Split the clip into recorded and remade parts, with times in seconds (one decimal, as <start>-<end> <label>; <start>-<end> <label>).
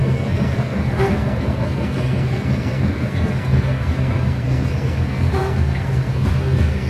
0.0-6.9 remade